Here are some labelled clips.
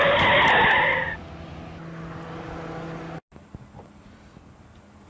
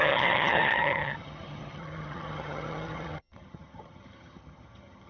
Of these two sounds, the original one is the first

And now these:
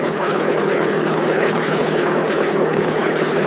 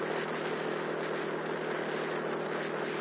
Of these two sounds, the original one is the second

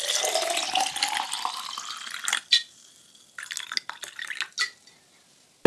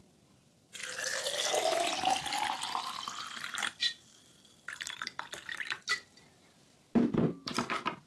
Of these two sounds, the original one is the first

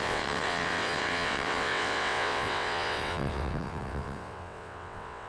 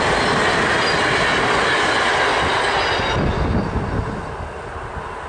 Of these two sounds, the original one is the second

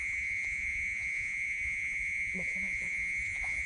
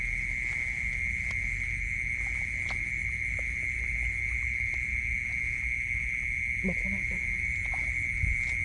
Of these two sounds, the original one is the second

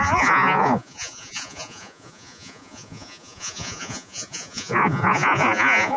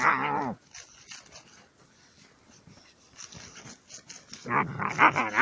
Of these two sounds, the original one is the second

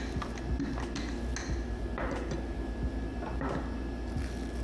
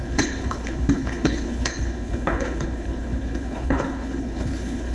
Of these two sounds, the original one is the first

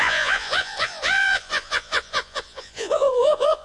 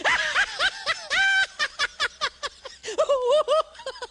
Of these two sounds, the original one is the second